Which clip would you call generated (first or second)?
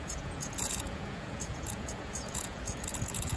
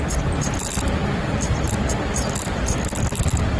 first